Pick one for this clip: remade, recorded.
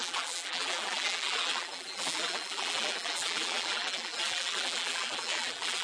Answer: remade